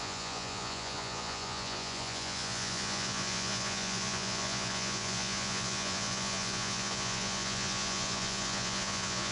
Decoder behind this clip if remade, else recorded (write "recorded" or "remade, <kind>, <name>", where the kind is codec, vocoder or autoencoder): remade, vocoder, Vocos